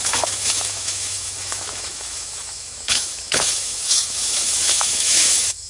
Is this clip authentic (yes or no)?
no